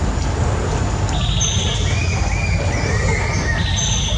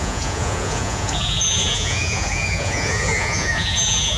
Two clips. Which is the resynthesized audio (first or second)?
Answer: second